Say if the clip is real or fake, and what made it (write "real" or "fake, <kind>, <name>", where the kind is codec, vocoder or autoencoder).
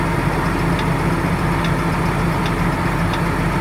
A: real